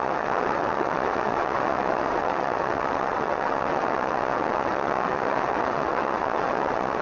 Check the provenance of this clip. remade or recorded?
remade